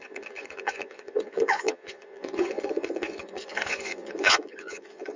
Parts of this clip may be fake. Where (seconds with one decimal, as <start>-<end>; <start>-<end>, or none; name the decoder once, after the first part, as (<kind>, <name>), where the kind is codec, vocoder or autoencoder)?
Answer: 0.0-5.2 (vocoder, Vocos)